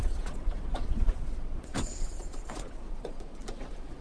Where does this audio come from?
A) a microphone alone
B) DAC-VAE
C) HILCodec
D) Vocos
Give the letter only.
D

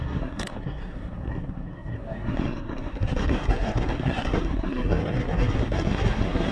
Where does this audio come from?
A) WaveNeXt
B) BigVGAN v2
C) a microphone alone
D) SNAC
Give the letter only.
D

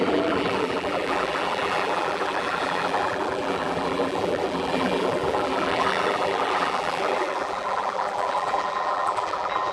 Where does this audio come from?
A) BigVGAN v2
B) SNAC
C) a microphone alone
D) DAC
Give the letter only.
A